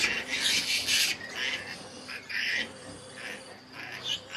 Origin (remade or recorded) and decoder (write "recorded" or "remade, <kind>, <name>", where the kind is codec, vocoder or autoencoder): recorded